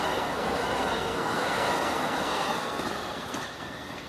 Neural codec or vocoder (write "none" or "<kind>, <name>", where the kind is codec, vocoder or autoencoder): codec, SNAC